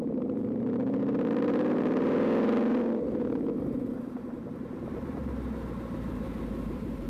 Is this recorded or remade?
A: remade